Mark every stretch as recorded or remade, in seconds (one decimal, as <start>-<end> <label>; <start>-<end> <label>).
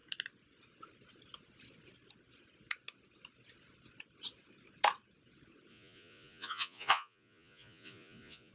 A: 0.0-5.7 recorded; 5.7-8.5 remade